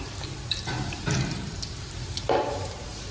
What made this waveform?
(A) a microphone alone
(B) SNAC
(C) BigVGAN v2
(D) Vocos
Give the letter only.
C